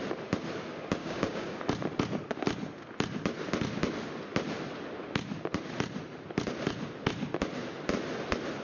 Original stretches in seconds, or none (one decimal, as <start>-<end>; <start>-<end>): 0.0-1.0; 1.6-8.6